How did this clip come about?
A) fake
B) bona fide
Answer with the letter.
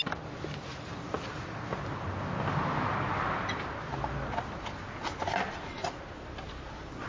B